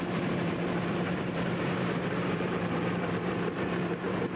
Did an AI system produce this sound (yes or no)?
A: yes